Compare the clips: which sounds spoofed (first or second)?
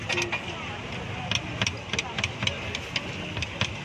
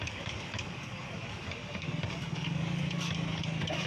second